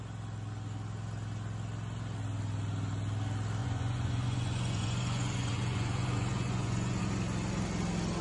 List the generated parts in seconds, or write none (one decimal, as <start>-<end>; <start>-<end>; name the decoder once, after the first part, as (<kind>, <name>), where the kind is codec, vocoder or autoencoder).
3.6-7.0 (vocoder, Vocos)